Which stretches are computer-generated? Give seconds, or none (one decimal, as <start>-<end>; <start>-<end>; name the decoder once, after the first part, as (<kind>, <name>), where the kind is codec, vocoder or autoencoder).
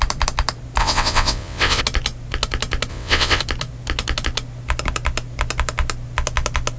0.8-1.8 (vocoder, WaveNeXt); 2.9-3.4